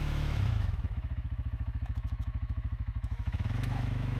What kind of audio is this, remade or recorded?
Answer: remade